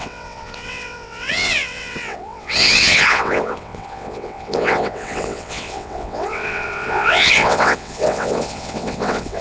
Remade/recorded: remade